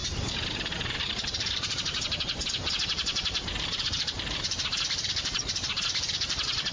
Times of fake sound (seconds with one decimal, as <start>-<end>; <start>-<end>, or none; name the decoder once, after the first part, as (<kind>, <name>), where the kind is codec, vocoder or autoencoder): 0.0-6.7 (vocoder, BigVGAN v2)